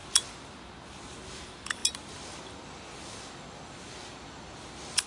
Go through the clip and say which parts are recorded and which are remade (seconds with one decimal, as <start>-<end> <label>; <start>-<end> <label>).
0.0-1.3 recorded; 1.3-1.8 remade; 1.8-5.1 recorded